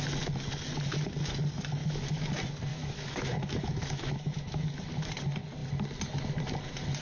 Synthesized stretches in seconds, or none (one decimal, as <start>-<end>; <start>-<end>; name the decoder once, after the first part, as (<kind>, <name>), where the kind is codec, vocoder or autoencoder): 1.8-2.3 (autoencoder, DAC-VAE); 2.7-5.1